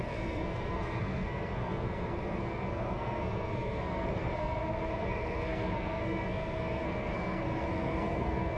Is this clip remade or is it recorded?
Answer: remade